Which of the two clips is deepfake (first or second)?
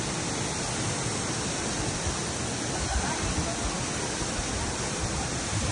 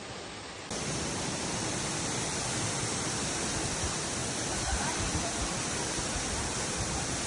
second